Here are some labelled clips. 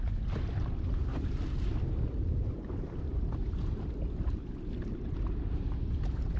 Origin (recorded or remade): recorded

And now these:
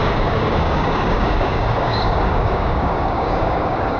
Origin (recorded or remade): remade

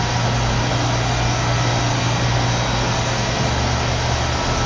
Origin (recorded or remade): recorded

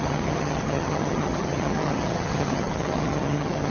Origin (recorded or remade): remade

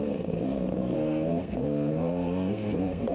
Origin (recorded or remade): remade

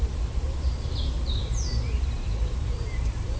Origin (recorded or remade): remade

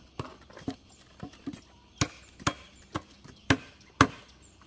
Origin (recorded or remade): recorded